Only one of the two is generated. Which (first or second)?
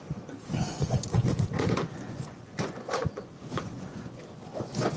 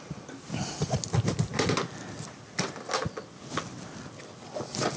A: first